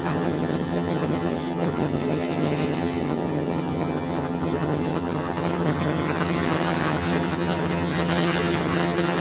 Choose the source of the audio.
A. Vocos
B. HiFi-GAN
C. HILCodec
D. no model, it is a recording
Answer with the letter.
B